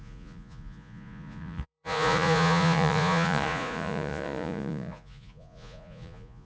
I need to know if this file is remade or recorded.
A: remade